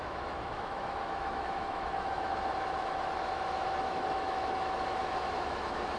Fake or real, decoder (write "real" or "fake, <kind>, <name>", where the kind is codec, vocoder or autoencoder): fake, autoencoder, DAC-VAE